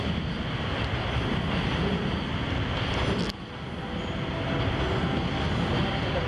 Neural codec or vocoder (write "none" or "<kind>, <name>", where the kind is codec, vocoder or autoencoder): none